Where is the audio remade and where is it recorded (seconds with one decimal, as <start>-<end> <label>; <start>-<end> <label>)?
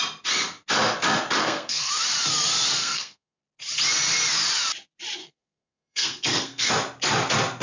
0.0-1.4 recorded; 1.4-1.9 remade; 1.9-2.8 recorded; 2.8-3.4 remade; 3.4-5.2 recorded; 5.2-6.7 remade; 6.7-7.6 recorded